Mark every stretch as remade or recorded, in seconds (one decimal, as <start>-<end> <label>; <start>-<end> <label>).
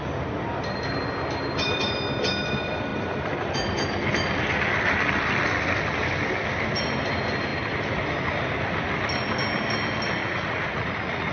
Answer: 0.0-10.2 recorded; 10.2-11.3 remade